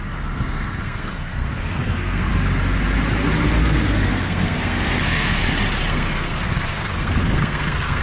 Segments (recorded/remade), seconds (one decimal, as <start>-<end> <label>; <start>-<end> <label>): 0.0-2.3 remade; 2.3-3.6 recorded; 3.6-5.4 remade; 5.4-5.9 recorded; 5.9-8.0 remade